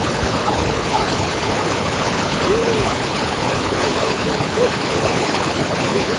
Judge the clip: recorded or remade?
remade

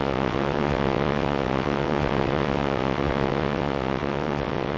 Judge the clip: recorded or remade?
remade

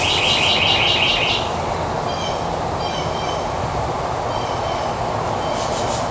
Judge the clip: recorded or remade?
recorded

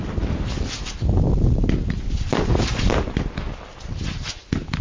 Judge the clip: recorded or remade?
recorded